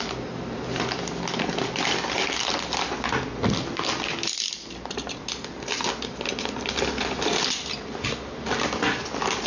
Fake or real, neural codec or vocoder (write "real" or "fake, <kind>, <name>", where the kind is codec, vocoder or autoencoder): real